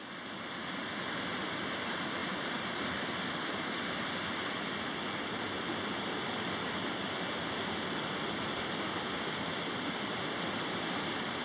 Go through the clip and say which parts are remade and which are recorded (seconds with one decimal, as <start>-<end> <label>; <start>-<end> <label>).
0.0-11.4 recorded